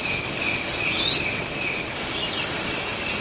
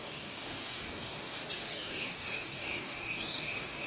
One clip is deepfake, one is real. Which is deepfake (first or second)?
second